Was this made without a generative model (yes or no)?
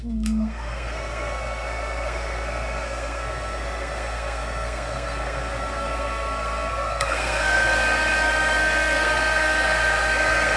no